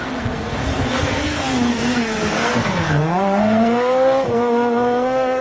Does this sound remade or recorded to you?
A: remade